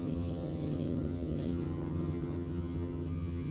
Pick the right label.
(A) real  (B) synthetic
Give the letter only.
B